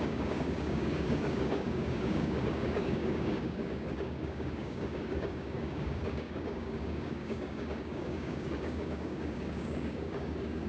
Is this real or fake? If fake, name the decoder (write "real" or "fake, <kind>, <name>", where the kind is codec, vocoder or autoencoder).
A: fake, codec, DAC